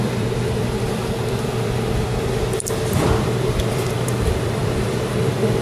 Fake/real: fake